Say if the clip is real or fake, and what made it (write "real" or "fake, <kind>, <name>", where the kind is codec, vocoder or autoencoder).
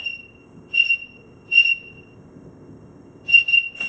fake, codec, ZipCodec